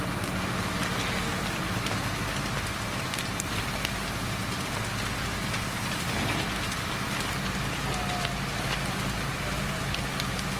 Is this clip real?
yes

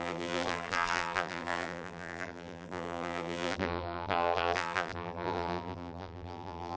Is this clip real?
no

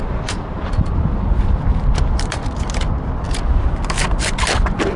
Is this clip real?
no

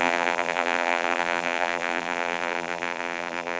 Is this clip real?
no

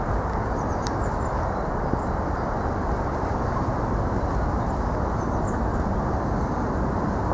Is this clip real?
yes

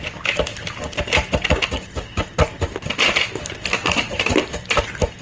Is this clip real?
yes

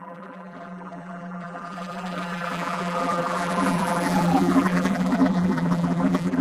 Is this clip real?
no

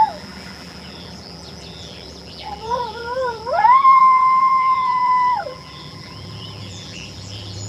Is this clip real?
no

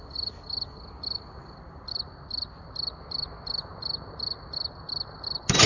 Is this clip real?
yes